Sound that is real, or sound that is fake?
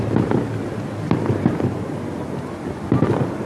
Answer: fake